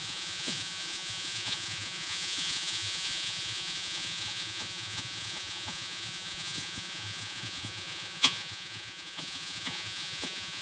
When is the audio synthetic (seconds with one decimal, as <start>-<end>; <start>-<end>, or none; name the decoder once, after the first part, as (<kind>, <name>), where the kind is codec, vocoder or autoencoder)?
0.0-10.6 (vocoder, Vocos)